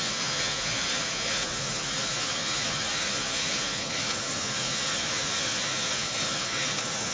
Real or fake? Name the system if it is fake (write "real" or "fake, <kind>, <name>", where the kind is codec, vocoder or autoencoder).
fake, vocoder, Vocos